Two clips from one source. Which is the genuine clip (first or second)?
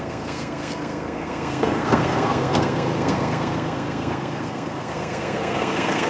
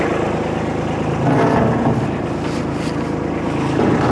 second